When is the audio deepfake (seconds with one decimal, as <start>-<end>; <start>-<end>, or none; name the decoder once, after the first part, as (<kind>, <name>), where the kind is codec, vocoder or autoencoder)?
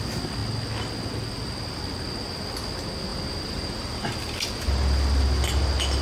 3.1-4.1 (vocoder, BigVGAN v2)